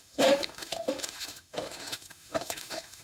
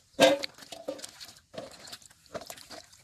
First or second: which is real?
second